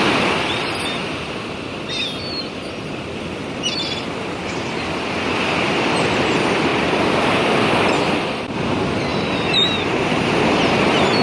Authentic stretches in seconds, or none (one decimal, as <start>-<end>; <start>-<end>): 0.0-11.2